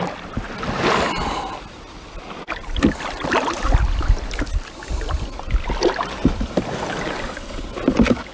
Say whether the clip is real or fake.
real